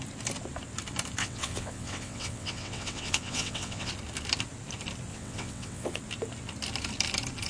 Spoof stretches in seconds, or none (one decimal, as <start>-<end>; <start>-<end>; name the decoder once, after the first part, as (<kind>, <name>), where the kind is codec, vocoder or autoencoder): 1.2-3.9 (vocoder, WaveNeXt); 5.1-6.0